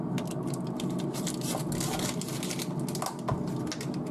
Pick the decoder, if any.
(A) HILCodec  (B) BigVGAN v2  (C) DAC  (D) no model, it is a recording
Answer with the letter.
D